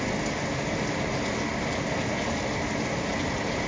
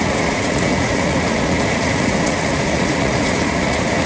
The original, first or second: first